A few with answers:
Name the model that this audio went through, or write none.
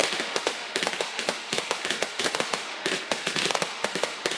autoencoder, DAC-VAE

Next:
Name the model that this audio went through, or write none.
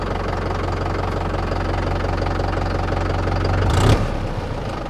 none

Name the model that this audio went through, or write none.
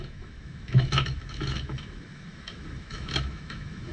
autoencoder, DAC-VAE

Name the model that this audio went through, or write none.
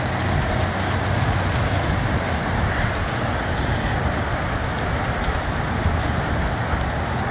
none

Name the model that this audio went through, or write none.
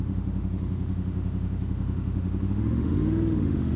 autoencoder, DAC-VAE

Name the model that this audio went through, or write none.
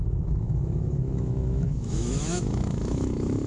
autoencoder, DAC-VAE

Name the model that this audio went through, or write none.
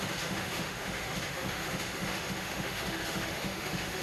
autoencoder, DAC-VAE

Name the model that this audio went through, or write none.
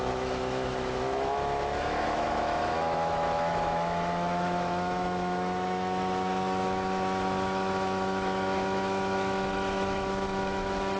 autoencoder, DAC-VAE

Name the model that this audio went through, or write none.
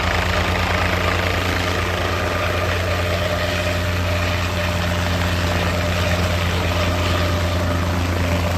none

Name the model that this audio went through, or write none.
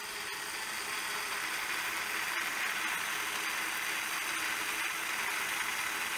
none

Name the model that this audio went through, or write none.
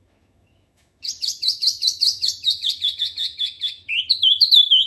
autoencoder, DAC-VAE